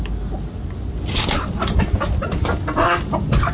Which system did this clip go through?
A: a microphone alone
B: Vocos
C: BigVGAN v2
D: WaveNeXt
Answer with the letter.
A